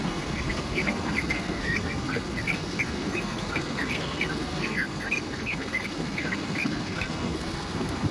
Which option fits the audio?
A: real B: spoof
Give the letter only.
B